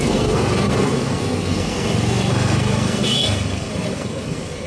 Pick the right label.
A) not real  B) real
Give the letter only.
A